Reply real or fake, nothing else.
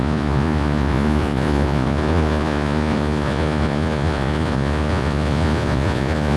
fake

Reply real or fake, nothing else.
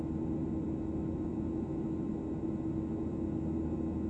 real